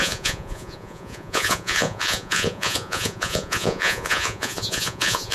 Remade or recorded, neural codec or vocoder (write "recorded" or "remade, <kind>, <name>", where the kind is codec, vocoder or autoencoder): remade, vocoder, Vocos